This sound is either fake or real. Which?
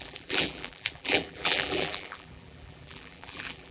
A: fake